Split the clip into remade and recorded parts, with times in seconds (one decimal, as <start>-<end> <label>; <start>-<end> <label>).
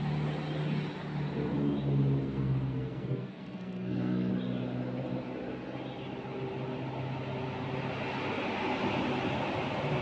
0.0-2.2 recorded; 2.2-4.3 remade; 4.3-10.0 recorded